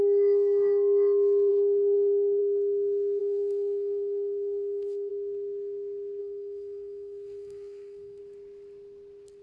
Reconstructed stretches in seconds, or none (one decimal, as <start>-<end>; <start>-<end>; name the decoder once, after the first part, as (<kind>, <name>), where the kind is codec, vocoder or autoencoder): 1.5-2.4 (codec, SNAC); 3.2-5.1; 6.2-8.2